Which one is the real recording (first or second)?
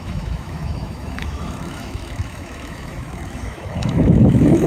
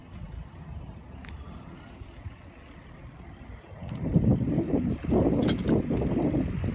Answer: second